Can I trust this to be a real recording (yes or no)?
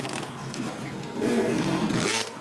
no